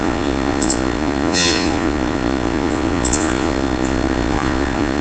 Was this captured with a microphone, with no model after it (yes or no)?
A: no